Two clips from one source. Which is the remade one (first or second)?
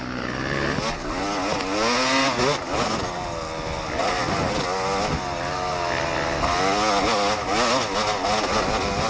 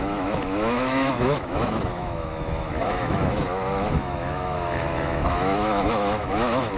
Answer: second